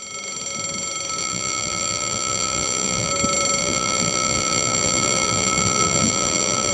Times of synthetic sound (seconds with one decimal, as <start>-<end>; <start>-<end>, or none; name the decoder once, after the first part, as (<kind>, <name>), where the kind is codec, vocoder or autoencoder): 1.2-3.1 (vocoder, BigVGAN v2); 3.6-6.7